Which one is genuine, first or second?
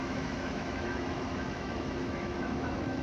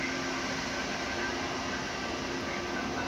second